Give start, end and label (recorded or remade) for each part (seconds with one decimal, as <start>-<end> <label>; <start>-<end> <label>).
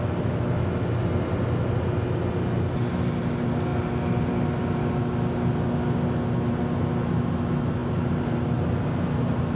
0.0-9.5 recorded